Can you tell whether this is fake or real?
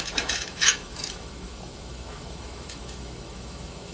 fake